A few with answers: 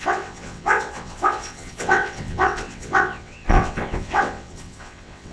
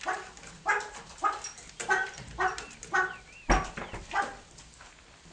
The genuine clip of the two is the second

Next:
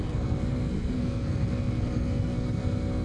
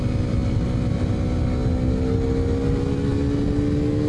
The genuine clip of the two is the second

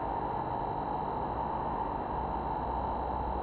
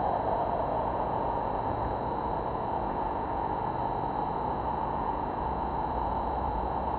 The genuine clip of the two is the first